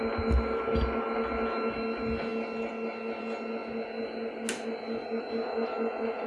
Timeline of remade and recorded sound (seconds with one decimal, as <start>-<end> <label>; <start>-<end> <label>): 0.0-6.3 recorded

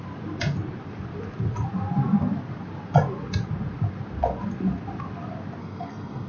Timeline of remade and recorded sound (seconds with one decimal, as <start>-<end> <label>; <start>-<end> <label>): 0.0-5.6 recorded; 5.6-6.3 remade

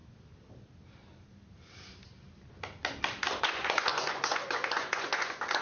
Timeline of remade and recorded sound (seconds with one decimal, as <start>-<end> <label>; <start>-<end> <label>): 0.0-3.4 recorded; 3.4-5.6 remade

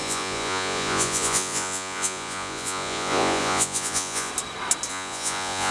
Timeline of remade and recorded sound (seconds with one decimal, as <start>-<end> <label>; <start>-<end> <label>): 0.0-4.3 remade; 4.3-4.9 recorded; 4.9-5.7 remade

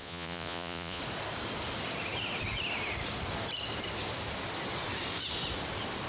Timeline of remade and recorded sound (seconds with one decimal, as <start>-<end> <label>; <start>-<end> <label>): 0.0-1.0 remade; 1.0-6.1 recorded

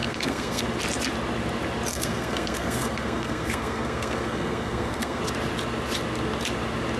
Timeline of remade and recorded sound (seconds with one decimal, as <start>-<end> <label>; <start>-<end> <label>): 0.0-0.6 remade; 0.6-1.9 recorded; 1.9-5.2 remade; 5.2-7.0 recorded

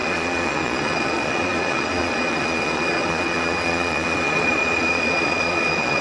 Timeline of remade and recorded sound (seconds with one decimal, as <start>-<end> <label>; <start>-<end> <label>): 0.0-6.0 remade

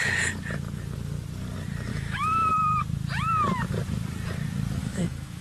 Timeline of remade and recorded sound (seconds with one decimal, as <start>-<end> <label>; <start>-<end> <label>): 0.0-1.9 recorded; 1.9-2.5 remade; 2.5-4.8 recorded; 4.8-5.4 remade